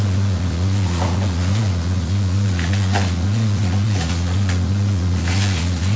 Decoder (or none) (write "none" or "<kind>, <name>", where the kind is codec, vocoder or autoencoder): vocoder, Vocos